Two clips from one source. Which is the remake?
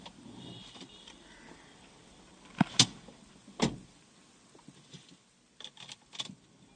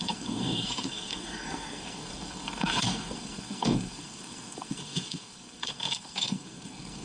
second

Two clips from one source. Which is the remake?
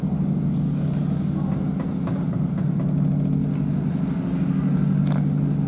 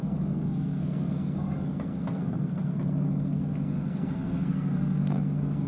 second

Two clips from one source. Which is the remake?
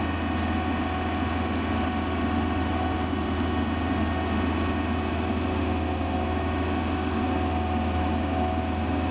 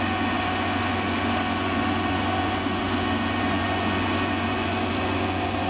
second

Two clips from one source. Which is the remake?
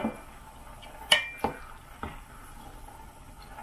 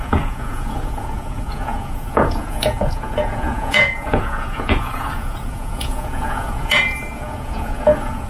second